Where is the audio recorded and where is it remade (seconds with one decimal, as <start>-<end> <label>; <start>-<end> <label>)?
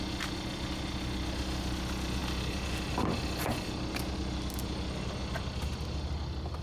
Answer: 0.0-6.6 recorded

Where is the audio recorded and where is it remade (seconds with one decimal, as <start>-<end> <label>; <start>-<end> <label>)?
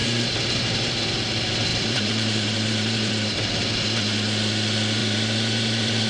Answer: 0.0-1.0 remade; 1.0-1.7 recorded; 1.7-3.5 remade; 3.5-5.0 recorded; 5.0-6.1 remade